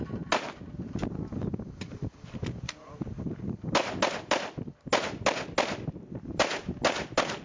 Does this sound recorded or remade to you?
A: recorded